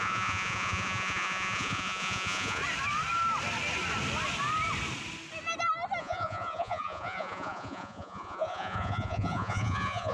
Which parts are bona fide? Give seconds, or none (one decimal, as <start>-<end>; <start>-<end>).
2.6-6.0